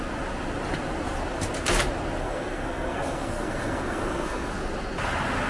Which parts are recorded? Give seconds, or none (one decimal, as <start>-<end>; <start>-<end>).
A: 0.0-2.2; 4.5-5.5